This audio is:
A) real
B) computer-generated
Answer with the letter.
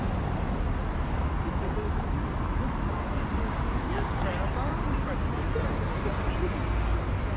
A